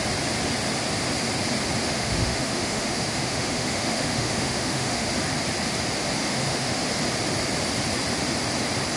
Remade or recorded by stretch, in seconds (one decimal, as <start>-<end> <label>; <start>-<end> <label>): 0.0-1.8 recorded; 1.8-5.1 remade; 5.1-6.2 recorded; 6.2-6.9 remade; 6.9-9.0 recorded